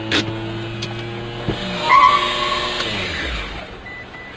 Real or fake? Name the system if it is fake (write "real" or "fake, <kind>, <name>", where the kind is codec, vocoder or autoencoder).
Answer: real